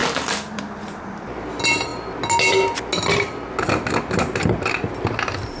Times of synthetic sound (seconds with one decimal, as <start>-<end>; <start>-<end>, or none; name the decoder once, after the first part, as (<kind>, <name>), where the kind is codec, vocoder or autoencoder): 0.0-0.6 (vocoder, BigVGAN v2)